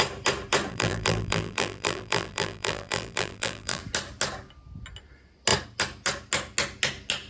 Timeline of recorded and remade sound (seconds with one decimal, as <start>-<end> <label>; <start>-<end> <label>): 0.0-0.7 recorded; 0.7-3.8 remade; 3.8-7.3 recorded